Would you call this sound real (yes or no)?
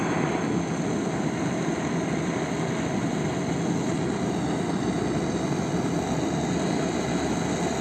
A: yes